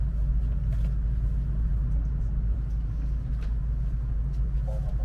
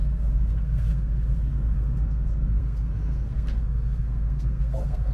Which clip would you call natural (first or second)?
first